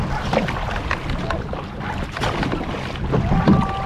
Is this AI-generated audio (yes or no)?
no